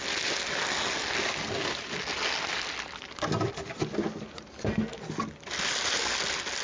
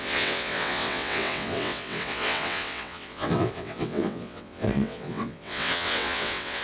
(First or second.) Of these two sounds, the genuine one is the first